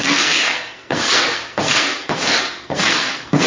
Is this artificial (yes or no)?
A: yes